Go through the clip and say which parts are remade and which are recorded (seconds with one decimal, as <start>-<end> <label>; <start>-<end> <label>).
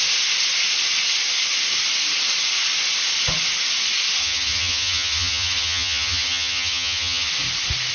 0.0-4.2 recorded; 4.2-7.3 remade; 7.3-7.9 recorded